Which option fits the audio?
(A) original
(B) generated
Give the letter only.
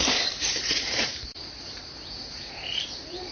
B